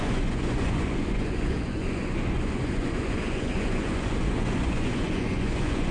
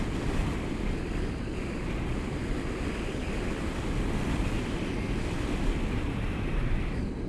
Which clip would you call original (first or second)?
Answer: second